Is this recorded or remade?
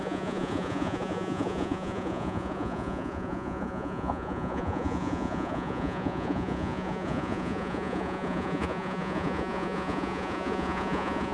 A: remade